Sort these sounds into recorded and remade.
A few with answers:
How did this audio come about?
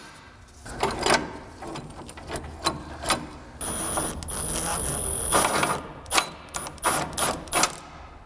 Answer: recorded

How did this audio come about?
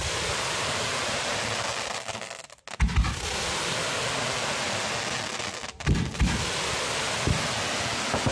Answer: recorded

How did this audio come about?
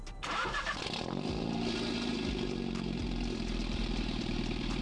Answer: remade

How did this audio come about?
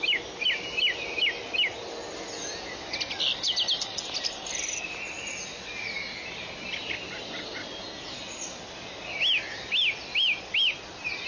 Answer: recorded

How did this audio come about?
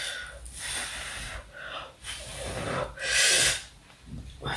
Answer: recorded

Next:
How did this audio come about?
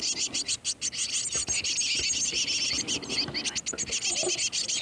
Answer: recorded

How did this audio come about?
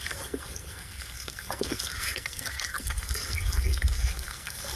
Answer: remade